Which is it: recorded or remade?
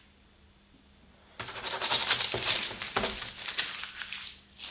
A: recorded